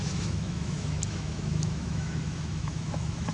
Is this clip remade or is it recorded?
remade